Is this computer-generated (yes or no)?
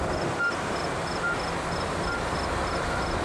no